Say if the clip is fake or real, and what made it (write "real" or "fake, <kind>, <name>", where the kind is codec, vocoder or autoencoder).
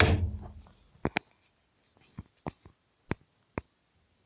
real